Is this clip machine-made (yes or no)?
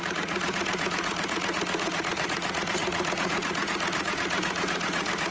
yes